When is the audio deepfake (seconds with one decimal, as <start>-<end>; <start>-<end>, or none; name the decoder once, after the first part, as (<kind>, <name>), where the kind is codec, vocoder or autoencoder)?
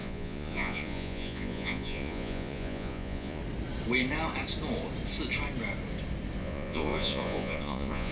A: 0.0-3.4 (vocoder, Vocos); 6.4-8.1